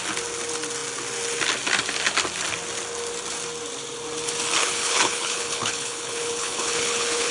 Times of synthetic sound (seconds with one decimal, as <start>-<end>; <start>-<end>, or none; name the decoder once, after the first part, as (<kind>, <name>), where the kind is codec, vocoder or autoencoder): 4.6-7.3 (codec, HILCodec)